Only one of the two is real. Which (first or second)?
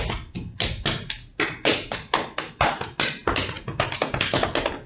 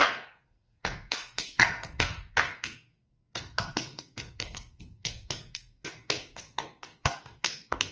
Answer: first